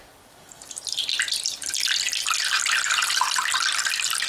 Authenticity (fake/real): real